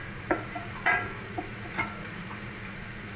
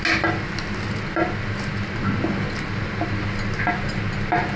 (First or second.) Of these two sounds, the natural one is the second